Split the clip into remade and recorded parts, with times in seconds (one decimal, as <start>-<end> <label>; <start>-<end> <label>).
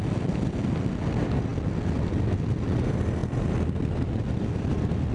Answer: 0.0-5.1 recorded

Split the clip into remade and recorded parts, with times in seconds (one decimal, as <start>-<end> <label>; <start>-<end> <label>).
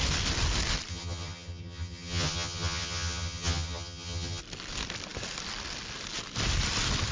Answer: 0.0-0.9 recorded; 0.9-4.4 remade; 4.4-7.1 recorded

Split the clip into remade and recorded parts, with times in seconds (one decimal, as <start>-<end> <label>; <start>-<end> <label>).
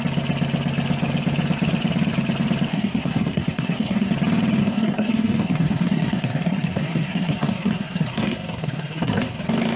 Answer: 0.0-2.7 recorded; 2.7-4.1 remade; 4.1-4.6 recorded; 4.6-9.4 remade; 9.4-9.8 recorded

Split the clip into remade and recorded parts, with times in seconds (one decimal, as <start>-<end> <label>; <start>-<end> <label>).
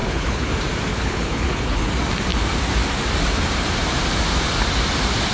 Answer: 0.0-0.5 remade; 0.5-0.9 recorded; 0.9-1.9 remade; 1.9-5.3 recorded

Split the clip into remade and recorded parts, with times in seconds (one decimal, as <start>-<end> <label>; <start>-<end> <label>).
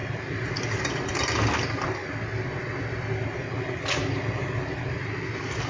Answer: 0.0-2.0 remade; 2.0-5.7 recorded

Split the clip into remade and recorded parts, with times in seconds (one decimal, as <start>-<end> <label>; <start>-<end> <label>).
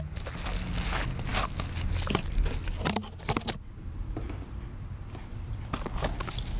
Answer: 0.0-6.6 recorded